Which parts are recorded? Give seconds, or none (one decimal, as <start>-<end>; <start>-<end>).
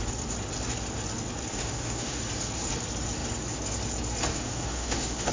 0.0-1.5; 2.2-4.3